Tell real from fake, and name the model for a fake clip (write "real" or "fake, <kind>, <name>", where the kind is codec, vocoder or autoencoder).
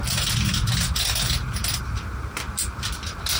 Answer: real